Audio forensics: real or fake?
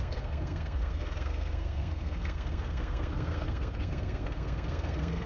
fake